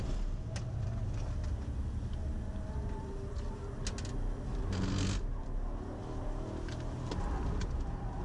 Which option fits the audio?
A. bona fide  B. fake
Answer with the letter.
A